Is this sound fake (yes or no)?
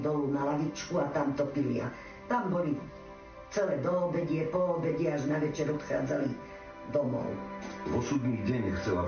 no